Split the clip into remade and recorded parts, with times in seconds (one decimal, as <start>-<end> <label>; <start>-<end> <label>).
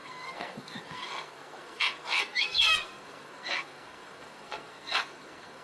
0.0-5.6 remade